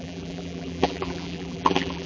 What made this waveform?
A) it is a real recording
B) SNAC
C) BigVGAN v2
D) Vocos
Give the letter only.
C